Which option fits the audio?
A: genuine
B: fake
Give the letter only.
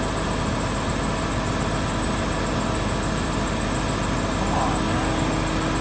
A